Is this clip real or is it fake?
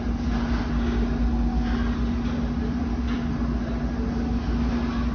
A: real